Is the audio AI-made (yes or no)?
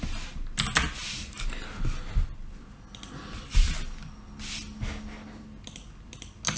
no